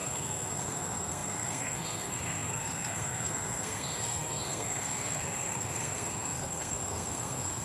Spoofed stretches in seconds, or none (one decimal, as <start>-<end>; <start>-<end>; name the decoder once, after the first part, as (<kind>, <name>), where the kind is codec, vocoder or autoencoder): 0.0-7.6 (codec, SNAC)